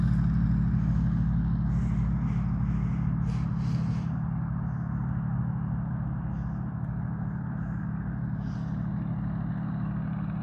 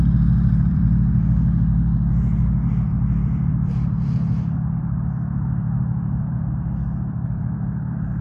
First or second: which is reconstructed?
second